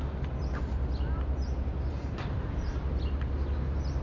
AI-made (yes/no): no